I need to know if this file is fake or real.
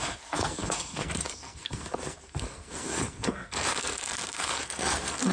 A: fake